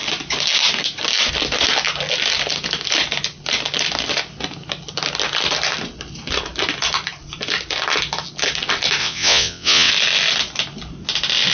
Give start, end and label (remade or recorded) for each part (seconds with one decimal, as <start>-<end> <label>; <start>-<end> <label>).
0.0-9.0 recorded; 9.0-9.9 remade; 9.9-11.5 recorded